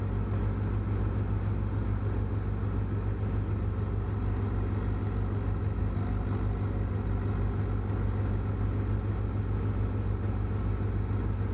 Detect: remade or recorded recorded